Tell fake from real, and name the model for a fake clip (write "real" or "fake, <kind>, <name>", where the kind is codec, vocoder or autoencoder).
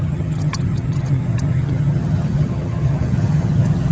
fake, vocoder, HiFi-GAN